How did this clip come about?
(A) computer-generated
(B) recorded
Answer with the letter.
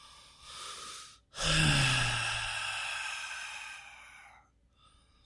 B